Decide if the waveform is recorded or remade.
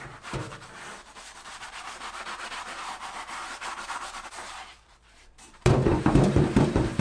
remade